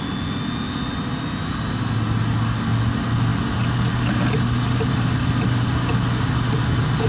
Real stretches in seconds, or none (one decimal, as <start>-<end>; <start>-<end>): 0.0-7.1